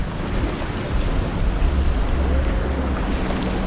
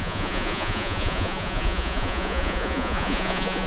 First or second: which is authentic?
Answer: first